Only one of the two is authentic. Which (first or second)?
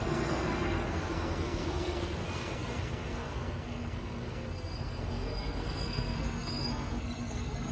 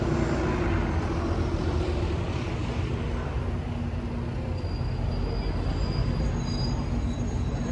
second